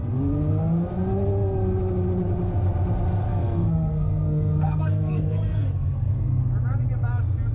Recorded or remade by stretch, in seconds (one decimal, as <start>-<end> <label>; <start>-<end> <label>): 0.0-3.3 recorded; 3.3-6.4 remade; 6.4-7.5 recorded